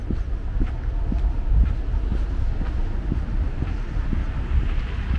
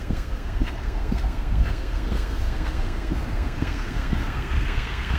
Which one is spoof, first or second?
second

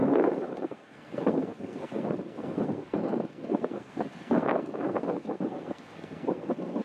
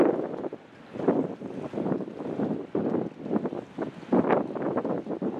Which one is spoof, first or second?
first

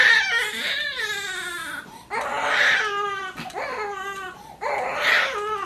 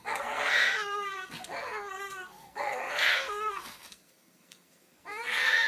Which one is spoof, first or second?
second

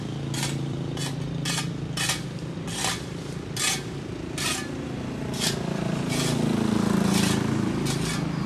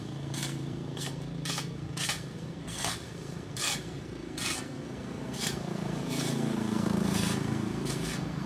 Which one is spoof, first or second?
second